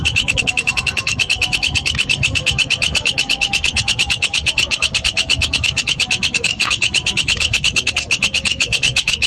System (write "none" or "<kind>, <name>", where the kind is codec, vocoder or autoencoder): codec, DAC